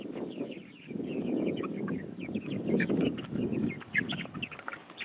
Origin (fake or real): fake